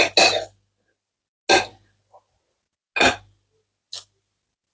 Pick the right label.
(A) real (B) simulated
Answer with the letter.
A